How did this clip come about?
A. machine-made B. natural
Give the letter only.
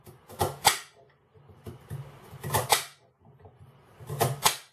B